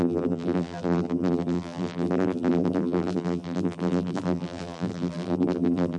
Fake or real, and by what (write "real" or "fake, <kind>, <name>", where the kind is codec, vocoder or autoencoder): fake, vocoder, BigVGAN v2